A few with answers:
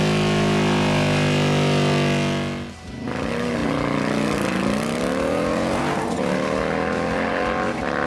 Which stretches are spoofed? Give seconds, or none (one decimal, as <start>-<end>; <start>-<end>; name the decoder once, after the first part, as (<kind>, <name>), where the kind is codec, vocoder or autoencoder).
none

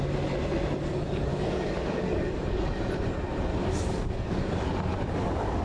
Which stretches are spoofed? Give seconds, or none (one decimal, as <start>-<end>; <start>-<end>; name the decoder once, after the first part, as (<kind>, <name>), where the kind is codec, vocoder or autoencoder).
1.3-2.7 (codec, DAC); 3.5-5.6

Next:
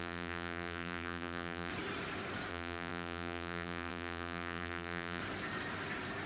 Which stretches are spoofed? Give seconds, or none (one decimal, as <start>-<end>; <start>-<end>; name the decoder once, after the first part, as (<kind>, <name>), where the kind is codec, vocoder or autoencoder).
0.0-1.7 (vocoder, BigVGAN v2); 2.5-5.2

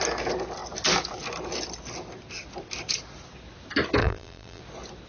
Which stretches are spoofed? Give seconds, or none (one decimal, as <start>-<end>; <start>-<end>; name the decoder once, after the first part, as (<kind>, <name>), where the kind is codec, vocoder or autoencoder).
4.0-4.6 (vocoder, BigVGAN v2)

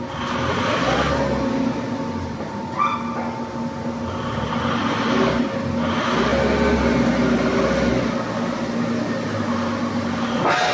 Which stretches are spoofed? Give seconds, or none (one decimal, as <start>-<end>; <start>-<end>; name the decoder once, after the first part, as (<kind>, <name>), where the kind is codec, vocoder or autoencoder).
none

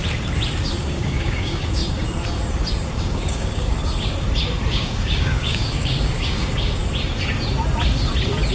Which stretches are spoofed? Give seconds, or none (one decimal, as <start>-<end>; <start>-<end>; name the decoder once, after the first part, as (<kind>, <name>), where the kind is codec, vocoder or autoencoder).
0.8-1.8 (codec, DAC); 3.0-3.8; 4.7-6.8

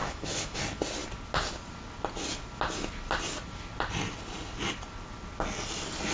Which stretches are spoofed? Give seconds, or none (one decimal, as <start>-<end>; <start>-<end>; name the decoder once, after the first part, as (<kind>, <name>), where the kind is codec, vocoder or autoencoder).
0.0-0.6 (autoencoder, DAC-VAE)

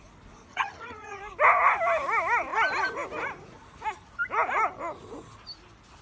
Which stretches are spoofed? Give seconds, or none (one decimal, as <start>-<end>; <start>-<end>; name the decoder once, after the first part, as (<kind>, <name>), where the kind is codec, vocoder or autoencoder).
0.5-1.2 (vocoder, HiFi-GAN)